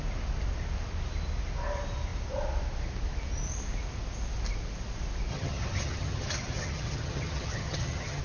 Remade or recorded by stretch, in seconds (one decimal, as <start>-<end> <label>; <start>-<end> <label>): 0.0-5.3 recorded; 5.3-8.2 remade